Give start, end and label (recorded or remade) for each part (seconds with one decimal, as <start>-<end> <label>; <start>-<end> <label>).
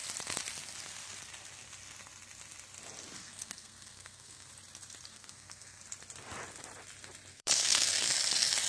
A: 0.0-3.2 recorded; 3.2-4.5 remade; 4.5-5.1 recorded; 5.1-5.8 remade; 5.8-7.3 recorded; 7.3-8.1 remade; 8.1-8.7 recorded